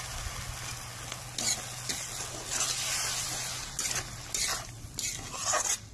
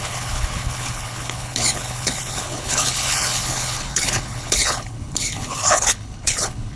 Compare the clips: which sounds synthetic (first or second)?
second